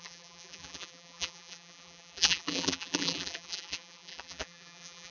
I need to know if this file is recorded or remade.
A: remade